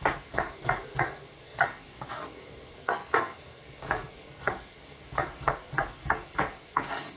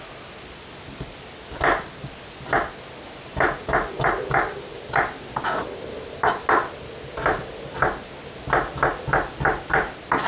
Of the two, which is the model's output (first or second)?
first